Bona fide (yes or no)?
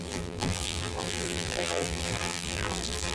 no